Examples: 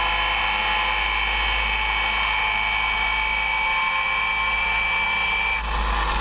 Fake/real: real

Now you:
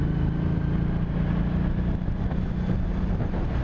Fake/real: real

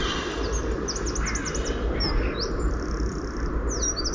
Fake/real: real